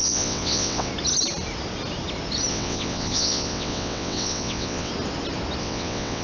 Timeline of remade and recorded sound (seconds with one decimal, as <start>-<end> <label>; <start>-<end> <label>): 0.0-0.9 remade; 0.9-2.5 recorded; 2.5-4.9 remade; 4.9-5.6 recorded; 5.6-6.2 remade